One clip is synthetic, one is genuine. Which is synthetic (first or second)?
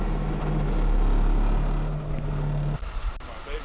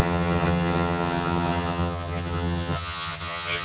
second